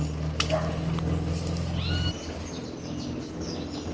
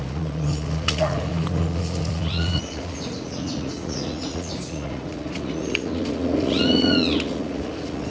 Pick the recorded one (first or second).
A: first